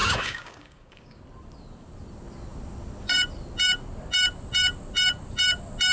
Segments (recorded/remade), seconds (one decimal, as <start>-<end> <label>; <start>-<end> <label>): 0.0-1.2 remade; 1.2-5.9 recorded